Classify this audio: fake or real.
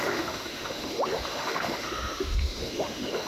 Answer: fake